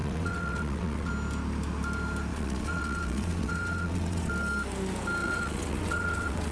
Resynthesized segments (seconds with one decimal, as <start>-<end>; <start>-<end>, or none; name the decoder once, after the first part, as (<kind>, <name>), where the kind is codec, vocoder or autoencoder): 0.0-1.1 (vocoder, WaveNeXt); 2.3-4.3; 5.2-6.5